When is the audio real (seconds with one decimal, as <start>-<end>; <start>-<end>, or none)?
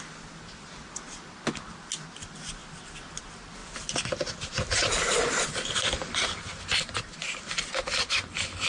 0.0-3.6